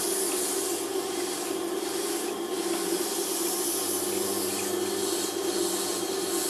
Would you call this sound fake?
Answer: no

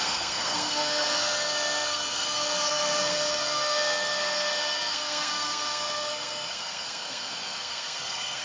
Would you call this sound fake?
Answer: yes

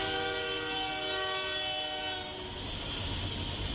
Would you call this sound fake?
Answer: no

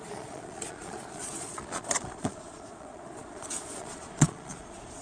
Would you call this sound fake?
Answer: yes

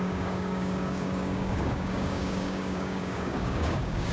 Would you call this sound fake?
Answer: yes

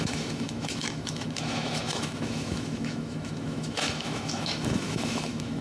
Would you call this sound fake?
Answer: yes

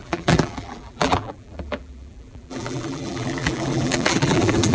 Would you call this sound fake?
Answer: yes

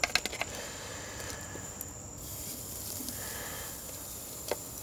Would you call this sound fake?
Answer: no